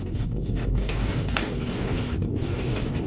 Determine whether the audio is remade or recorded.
remade